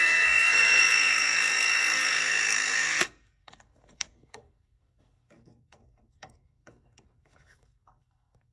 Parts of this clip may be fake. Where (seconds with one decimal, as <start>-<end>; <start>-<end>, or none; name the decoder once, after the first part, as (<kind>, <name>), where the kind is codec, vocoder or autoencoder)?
0.0-8.5 (codec, SNAC)